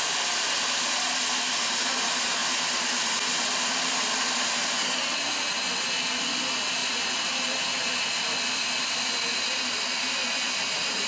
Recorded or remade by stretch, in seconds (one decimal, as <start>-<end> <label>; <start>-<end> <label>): 0.0-2.4 recorded; 2.4-4.6 remade; 4.6-6.8 recorded; 6.8-11.1 remade